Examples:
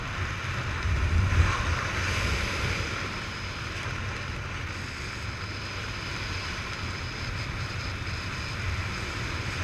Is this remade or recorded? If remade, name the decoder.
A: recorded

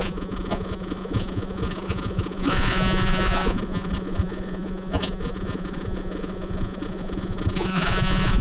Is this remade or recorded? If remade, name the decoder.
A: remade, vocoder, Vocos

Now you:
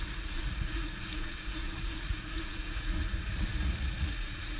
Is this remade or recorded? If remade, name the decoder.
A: remade, vocoder, Vocos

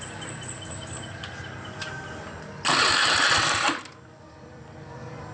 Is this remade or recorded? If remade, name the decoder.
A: recorded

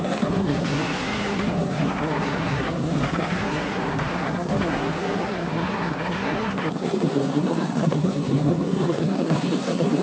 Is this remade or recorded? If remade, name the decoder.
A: remade, codec, SNAC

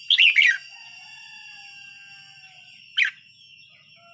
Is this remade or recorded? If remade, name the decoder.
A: recorded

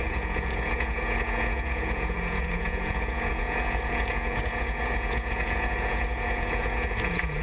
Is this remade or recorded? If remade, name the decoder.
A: remade, vocoder, Vocos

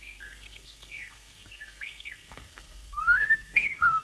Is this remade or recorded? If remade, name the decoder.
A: remade, codec, SNAC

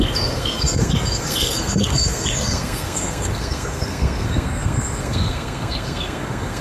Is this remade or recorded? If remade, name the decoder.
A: remade, codec, SNAC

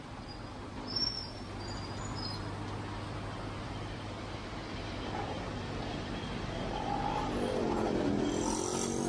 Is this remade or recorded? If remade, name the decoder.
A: recorded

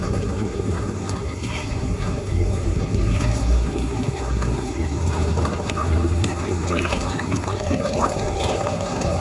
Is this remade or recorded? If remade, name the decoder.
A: remade, codec, SNAC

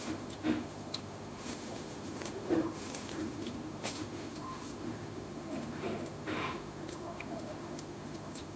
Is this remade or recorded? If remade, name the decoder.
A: remade, autoencoder, DAC-VAE